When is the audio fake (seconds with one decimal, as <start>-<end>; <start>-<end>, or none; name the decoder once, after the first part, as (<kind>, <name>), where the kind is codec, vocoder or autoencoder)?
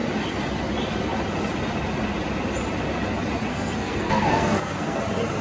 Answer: 3.5-5.0 (codec, SNAC)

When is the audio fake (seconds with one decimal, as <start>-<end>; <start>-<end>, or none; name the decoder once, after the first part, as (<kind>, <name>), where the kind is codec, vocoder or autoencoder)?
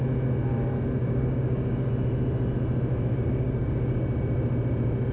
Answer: 1.0-1.9 (codec, DAC); 2.9-4.0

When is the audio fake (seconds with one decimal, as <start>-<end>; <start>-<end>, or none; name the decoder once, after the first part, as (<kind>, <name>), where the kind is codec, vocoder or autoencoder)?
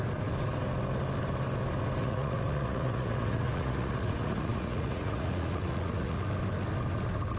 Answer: 2.0-6.2 (vocoder, Vocos)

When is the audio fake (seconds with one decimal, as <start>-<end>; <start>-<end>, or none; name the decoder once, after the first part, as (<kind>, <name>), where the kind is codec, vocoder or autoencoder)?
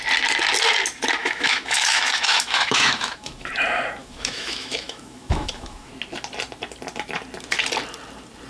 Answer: 1.2-3.5 (autoencoder, DAC-VAE); 4.0-5.9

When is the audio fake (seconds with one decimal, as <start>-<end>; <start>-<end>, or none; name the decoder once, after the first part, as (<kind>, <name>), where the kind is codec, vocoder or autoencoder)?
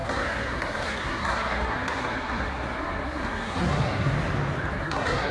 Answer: 0.0-4.1 (codec, SNAC); 4.7-5.3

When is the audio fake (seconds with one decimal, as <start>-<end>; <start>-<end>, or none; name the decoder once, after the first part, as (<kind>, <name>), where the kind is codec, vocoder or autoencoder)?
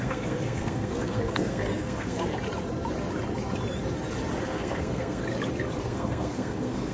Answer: 0.0-2.3 (codec, SNAC); 4.4-5.2; 5.8-6.9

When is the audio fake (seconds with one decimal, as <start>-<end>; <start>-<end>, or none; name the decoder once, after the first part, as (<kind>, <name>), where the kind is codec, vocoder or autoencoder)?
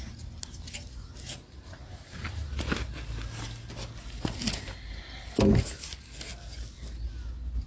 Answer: none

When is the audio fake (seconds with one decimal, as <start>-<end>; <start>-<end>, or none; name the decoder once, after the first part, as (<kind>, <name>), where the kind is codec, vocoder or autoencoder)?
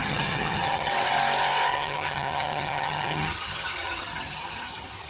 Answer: 0.0-0.9 (vocoder, HiFi-GAN); 1.7-5.1